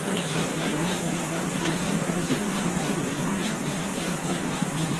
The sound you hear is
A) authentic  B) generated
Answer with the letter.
B